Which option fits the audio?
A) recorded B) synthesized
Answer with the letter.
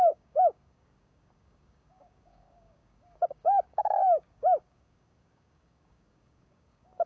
B